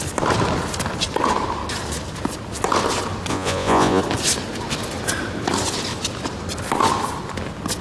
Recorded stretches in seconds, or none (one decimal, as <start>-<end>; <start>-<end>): 0.0-3.3; 4.0-7.8